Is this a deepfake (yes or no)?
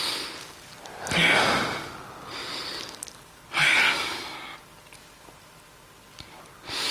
no